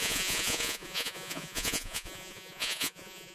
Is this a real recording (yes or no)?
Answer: no